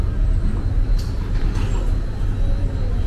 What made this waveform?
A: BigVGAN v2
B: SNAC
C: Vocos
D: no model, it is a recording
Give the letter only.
D